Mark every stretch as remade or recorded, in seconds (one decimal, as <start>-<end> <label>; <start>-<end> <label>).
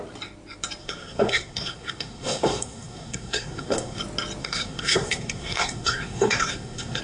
0.0-0.8 recorded; 0.8-4.0 remade; 4.0-4.4 recorded; 4.4-7.0 remade